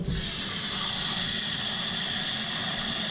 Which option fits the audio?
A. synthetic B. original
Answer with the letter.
B